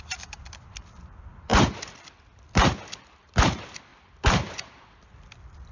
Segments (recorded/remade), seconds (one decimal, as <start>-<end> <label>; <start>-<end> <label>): 0.0-1.5 remade; 1.5-3.1 recorded; 3.1-3.9 remade; 3.9-5.1 recorded; 5.1-5.7 remade